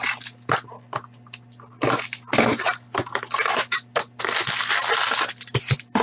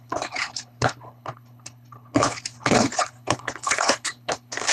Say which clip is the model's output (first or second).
second